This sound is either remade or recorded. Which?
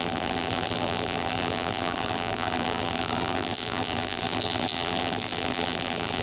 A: remade